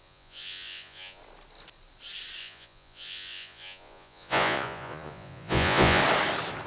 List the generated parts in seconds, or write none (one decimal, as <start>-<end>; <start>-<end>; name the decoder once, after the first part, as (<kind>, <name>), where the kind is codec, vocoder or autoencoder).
0.0-1.2 (vocoder, Vocos); 2.4-6.0